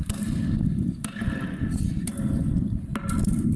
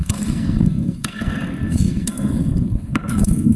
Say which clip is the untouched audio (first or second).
first